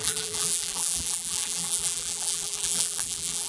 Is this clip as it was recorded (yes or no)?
no